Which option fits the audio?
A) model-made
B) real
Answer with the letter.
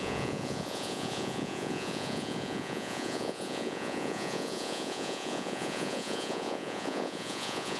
A